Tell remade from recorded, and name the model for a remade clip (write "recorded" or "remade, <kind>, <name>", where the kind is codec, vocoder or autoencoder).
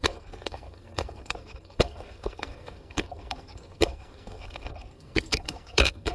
remade, codec, SNAC